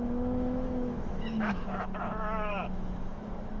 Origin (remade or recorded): remade